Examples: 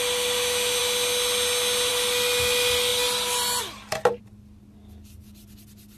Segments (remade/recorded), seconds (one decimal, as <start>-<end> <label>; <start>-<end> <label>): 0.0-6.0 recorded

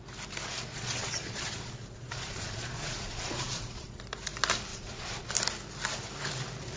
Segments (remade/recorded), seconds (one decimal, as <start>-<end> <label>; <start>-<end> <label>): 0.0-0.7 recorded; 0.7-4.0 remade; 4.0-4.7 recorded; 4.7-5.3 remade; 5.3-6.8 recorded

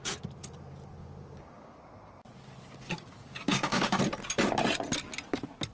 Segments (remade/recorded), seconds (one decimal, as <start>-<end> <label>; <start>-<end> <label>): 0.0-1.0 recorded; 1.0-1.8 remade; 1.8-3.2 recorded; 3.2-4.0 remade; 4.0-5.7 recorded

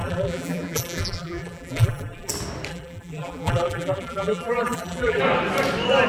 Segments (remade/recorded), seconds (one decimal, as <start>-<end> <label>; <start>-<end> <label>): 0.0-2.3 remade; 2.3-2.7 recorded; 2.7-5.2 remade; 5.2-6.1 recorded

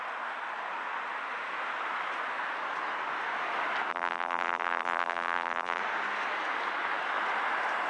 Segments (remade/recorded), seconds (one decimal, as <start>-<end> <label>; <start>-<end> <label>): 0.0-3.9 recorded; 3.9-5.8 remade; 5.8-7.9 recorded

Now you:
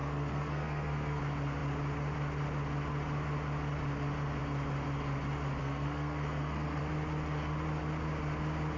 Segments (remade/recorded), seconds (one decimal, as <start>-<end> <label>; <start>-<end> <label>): 0.0-1.2 remade; 1.2-5.6 recorded; 5.6-6.8 remade; 6.8-8.8 recorded

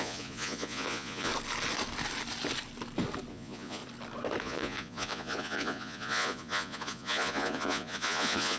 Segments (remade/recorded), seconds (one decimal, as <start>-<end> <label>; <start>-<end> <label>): 0.0-1.3 remade; 1.3-3.3 recorded; 3.3-3.8 remade; 3.8-4.4 recorded; 4.4-8.6 remade

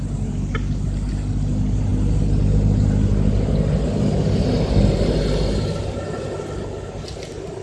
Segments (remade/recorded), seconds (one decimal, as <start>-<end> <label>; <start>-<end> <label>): 0.0-7.6 recorded